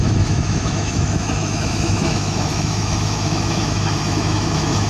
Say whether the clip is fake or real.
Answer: fake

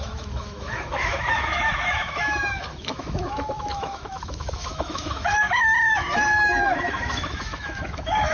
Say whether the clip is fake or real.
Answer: fake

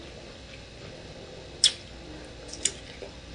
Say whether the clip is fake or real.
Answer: real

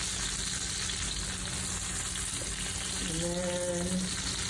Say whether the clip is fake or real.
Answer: real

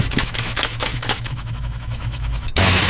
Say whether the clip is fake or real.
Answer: fake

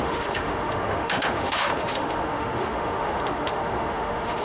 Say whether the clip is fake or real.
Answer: fake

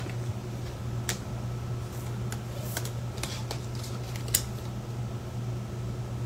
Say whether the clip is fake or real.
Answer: real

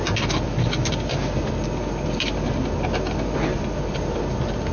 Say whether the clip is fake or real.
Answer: real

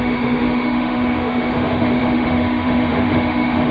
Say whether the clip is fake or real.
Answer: fake